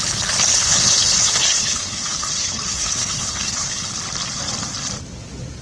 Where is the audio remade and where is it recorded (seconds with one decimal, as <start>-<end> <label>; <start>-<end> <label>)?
0.0-0.5 recorded; 0.5-3.9 remade; 3.9-5.6 recorded